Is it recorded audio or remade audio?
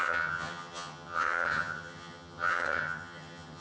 remade